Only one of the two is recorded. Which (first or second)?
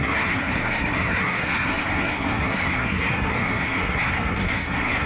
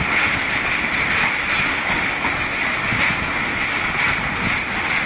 second